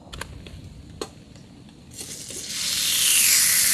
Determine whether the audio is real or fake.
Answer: real